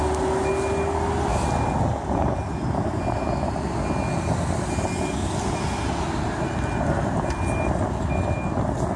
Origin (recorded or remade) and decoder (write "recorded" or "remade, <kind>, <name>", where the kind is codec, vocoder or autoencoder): recorded